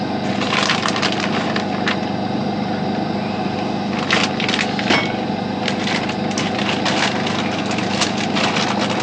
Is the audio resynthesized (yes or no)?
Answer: no